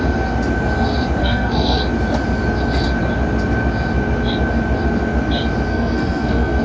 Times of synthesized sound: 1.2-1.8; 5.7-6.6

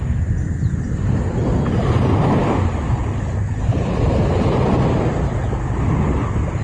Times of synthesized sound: none